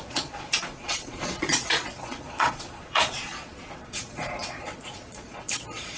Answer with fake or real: fake